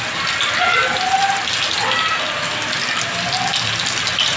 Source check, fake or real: real